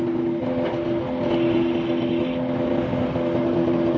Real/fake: real